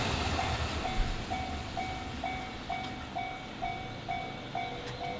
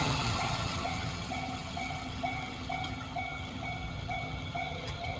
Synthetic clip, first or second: second